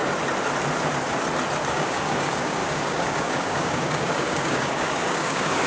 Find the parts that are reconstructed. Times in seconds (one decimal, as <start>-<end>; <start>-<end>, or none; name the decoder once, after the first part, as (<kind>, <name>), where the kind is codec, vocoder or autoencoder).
1.7-5.7 (codec, DAC)